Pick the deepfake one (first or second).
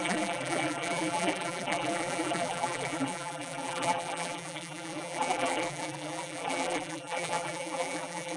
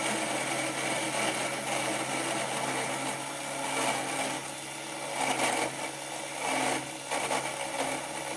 first